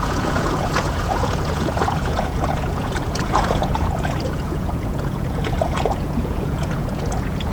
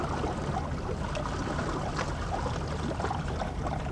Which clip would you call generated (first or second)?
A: first